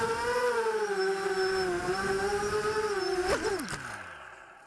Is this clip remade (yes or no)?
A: no